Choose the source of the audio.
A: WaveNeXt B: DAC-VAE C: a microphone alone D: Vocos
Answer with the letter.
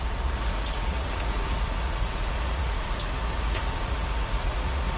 D